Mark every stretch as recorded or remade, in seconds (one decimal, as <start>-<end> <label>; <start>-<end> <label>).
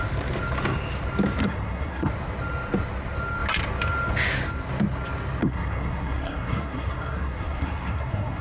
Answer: 0.0-1.4 recorded; 1.4-2.1 remade; 2.1-5.4 recorded; 5.4-8.4 remade